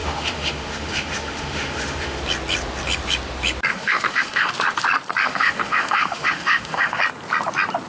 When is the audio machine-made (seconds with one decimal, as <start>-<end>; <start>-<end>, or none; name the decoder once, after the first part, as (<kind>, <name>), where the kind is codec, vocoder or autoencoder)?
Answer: 0.0-2.2 (autoencoder, DAC-VAE); 3.7-4.5; 5.2-7.0